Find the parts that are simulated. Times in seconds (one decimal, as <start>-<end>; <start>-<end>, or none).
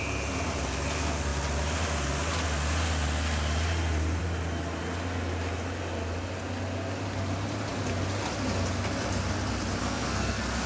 9.8-10.7